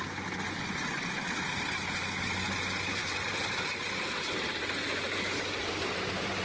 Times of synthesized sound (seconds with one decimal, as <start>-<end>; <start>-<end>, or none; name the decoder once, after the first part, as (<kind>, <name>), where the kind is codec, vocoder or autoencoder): 3.0-6.4 (vocoder, BigVGAN v2)